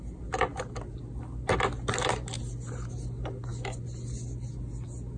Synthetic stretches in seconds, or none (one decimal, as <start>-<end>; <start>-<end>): none